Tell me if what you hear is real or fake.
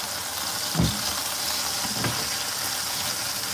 real